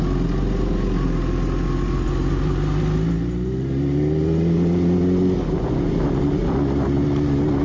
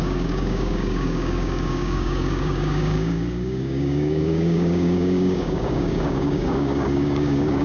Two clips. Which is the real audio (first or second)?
first